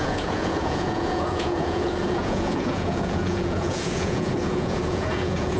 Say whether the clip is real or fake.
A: fake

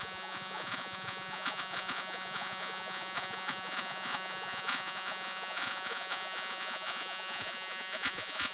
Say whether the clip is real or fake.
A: fake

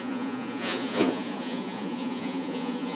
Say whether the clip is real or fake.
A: fake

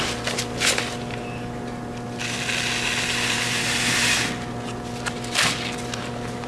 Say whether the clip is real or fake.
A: real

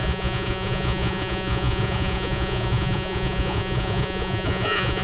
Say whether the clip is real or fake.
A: fake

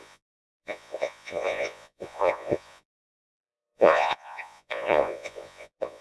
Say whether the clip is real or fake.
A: fake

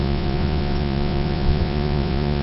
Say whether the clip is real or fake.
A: fake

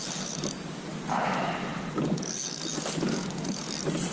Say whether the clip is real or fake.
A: real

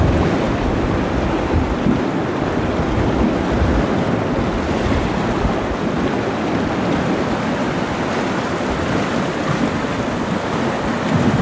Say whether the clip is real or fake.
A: real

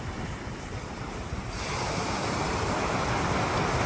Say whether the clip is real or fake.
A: real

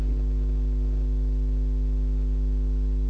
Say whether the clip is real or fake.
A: real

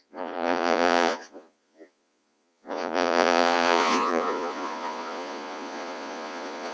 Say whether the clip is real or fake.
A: fake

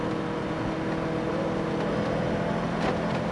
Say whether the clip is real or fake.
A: real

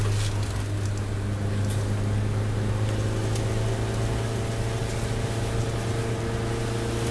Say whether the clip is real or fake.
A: real